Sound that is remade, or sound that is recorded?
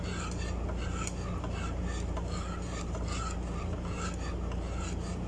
recorded